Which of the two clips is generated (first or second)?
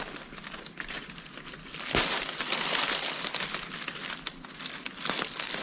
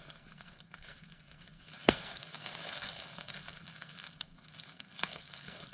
second